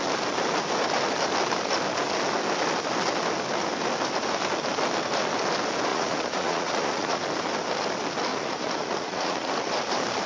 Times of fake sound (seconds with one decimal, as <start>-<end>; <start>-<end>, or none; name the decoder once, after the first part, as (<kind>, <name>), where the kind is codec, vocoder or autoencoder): 5.9-7.2 (vocoder, Vocos); 8.3-9.5